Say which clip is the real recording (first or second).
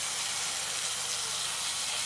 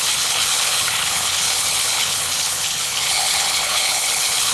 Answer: first